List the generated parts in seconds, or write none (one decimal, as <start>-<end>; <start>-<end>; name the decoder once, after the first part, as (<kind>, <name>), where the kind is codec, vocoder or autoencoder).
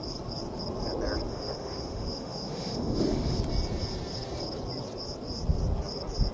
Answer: 1.3-3.4 (autoencoder, DAC-VAE)